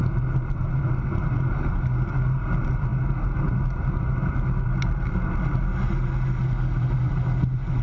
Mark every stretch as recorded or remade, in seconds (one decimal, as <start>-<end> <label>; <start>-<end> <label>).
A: 0.0-7.8 recorded